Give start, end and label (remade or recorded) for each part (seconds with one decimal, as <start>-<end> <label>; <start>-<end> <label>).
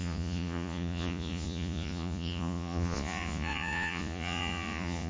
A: 0.0-5.1 remade